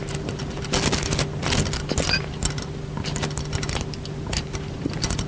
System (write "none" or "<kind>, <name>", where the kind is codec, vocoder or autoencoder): none